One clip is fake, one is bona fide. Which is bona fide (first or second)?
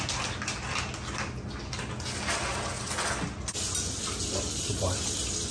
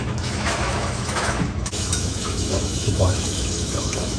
first